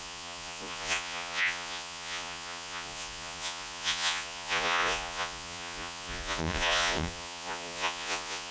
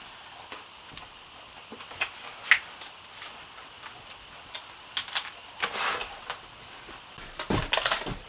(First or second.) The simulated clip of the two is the first